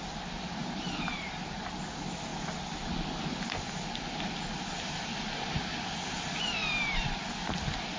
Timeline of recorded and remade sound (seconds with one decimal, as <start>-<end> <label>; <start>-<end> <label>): 0.0-8.0 recorded